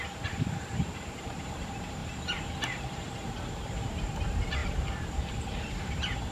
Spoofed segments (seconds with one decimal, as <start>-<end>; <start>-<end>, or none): 0.0-6.3